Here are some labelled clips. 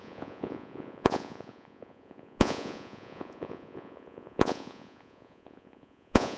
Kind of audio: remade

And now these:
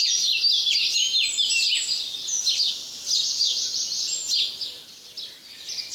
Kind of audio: recorded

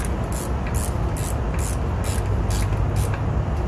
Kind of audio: recorded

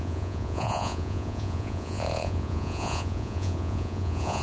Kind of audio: remade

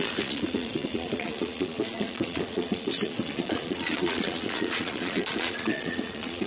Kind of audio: remade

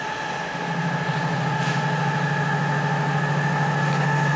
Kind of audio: recorded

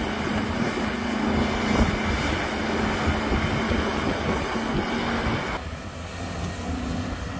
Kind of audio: recorded